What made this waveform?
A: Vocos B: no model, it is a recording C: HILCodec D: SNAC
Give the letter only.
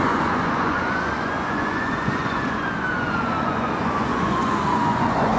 A